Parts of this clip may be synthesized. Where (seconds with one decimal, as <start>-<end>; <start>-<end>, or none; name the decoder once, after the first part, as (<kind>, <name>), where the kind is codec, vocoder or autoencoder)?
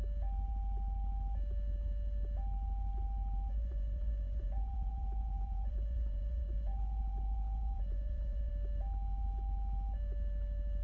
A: 3.5-8.5 (vocoder, Vocos)